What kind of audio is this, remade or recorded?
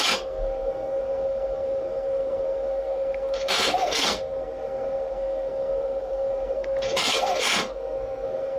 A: remade